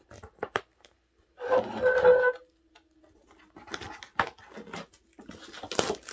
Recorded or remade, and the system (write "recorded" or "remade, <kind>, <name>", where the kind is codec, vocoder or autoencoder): recorded